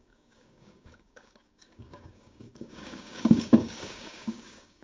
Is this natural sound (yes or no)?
no